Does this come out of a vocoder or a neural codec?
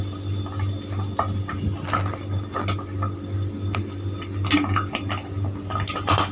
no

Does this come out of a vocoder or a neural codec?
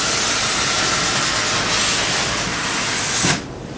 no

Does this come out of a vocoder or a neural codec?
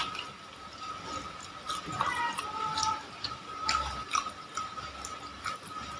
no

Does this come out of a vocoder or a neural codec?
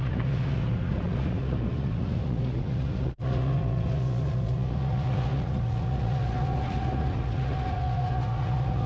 yes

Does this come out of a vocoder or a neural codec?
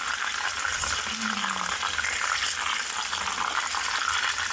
no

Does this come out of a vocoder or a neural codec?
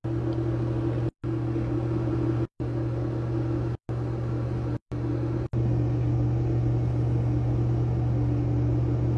no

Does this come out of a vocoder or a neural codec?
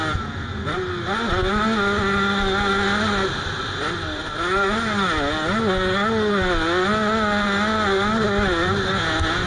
no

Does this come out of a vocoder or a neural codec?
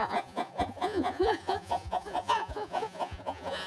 yes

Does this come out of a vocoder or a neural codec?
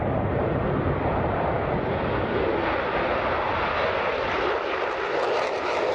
no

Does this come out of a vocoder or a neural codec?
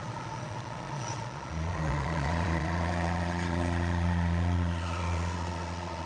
yes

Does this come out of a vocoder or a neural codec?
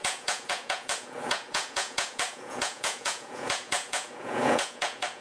yes